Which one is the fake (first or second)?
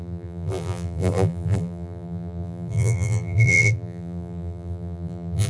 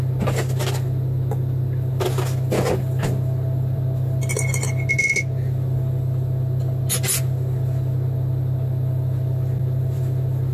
first